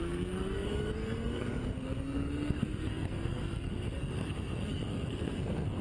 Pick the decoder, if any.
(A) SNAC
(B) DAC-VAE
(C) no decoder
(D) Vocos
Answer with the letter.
A